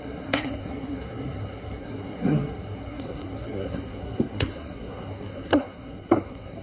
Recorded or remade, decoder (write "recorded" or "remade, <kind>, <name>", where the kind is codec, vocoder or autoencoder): remade, codec, SNAC